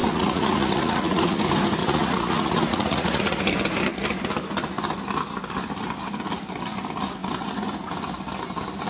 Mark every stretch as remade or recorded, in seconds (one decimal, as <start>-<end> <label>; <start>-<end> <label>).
0.0-1.4 remade; 1.4-1.8 recorded; 1.8-3.4 remade; 3.4-8.9 recorded